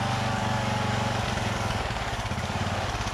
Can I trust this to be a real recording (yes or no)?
no